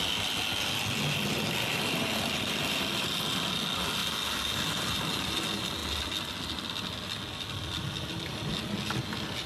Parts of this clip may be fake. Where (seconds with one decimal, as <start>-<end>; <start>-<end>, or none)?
1.7-3.0